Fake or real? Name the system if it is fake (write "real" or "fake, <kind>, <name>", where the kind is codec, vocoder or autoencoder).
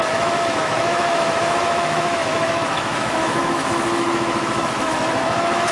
fake, autoencoder, DAC-VAE